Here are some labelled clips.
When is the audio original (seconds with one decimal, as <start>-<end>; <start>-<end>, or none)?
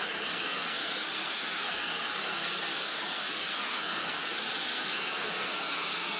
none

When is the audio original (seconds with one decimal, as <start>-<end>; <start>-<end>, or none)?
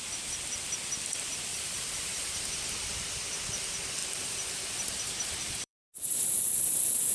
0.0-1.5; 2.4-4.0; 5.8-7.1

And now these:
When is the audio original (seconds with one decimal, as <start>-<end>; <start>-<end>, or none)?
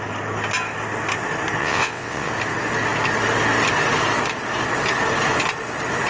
0.0-1.6; 2.3-6.1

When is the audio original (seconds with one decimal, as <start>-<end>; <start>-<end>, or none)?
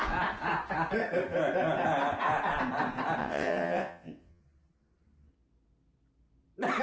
0.0-3.2; 4.4-6.8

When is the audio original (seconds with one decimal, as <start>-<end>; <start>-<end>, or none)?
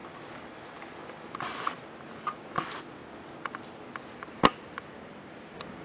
0.0-5.8